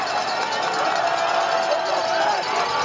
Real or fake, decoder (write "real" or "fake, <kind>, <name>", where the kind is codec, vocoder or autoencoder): real